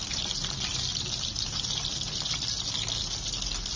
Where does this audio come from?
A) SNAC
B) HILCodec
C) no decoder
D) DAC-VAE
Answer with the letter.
C